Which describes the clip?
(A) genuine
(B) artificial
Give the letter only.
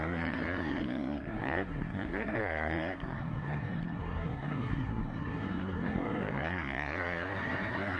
B